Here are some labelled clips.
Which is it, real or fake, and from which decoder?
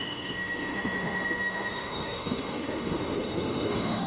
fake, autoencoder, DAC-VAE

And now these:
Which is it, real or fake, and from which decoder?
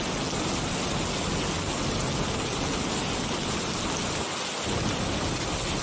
real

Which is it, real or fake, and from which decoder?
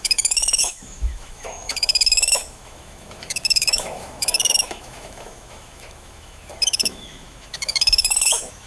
fake, autoencoder, DAC-VAE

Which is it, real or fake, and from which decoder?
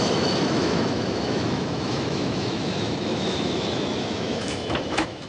fake, autoencoder, DAC-VAE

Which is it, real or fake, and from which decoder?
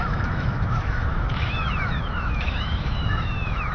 fake, autoencoder, DAC-VAE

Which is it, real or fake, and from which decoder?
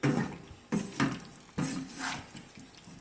real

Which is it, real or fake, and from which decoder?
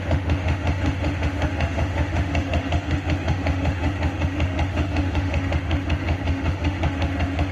fake, autoencoder, DAC-VAE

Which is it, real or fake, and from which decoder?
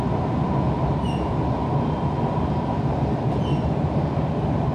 real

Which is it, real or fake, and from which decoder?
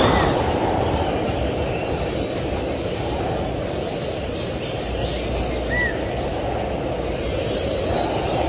real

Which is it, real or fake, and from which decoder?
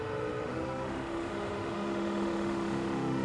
fake, autoencoder, DAC-VAE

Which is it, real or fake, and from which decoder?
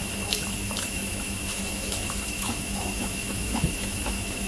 fake, autoencoder, DAC-VAE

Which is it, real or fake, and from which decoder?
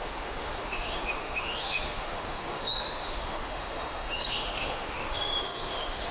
fake, autoencoder, DAC-VAE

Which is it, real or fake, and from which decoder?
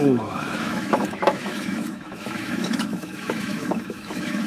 fake, autoencoder, DAC-VAE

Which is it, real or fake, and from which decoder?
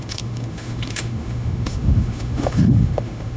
fake, autoencoder, DAC-VAE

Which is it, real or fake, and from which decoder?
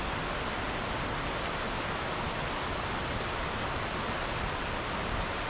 real